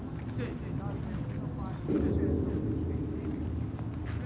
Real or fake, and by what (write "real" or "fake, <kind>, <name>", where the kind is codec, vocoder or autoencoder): real